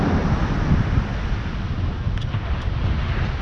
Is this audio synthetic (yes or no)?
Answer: no